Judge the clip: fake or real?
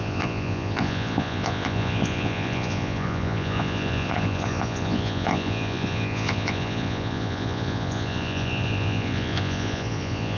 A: fake